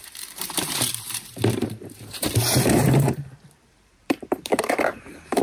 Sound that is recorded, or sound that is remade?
remade